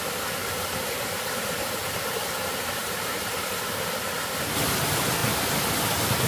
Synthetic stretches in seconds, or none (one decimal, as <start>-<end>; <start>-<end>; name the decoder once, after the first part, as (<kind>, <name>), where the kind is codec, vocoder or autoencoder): 0.4-2.1 (vocoder, BigVGAN v2); 2.8-3.9